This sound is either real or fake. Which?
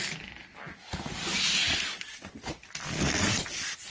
real